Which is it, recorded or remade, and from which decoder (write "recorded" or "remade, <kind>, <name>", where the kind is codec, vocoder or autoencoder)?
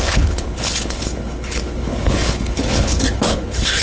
remade, codec, HILCodec